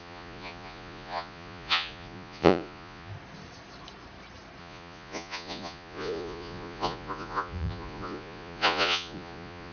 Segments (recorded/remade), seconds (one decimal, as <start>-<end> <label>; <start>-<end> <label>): 0.0-3.1 remade; 3.1-4.6 recorded; 4.6-9.7 remade